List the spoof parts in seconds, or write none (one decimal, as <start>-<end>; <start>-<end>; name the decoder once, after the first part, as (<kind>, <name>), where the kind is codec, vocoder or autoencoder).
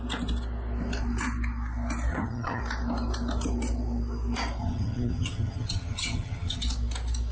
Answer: 2.1-2.6 (vocoder, HiFi-GAN); 4.6-6.6